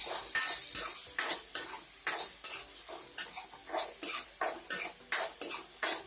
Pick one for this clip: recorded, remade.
recorded